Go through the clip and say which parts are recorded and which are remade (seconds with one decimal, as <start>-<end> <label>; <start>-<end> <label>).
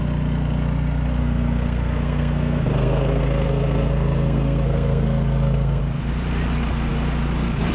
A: 0.0-1.2 recorded; 1.2-5.8 remade; 5.8-7.7 recorded